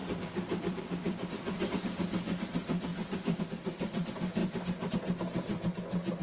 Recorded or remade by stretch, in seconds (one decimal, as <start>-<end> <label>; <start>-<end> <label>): 0.0-1.7 remade; 1.7-2.9 recorded; 2.9-3.4 remade; 3.4-4.4 recorded; 4.4-4.9 remade; 4.9-6.2 recorded